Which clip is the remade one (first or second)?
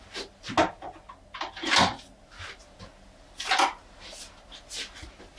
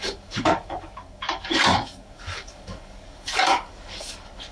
second